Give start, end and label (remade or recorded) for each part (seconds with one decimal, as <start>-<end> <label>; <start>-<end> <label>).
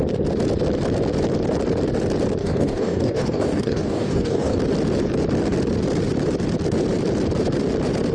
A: 0.0-2.4 recorded; 2.4-4.6 remade; 4.6-8.1 recorded